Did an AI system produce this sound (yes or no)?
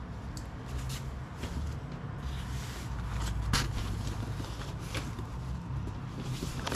no